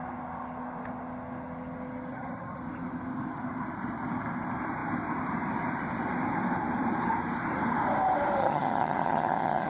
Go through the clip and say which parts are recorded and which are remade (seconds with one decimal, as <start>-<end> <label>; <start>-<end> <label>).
0.0-2.1 recorded; 2.1-2.6 remade; 2.6-8.4 recorded; 8.4-9.7 remade